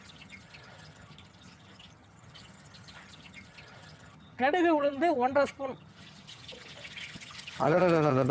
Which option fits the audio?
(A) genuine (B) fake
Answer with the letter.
B